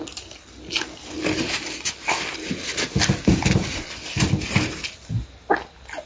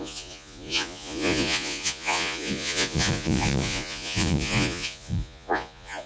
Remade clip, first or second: second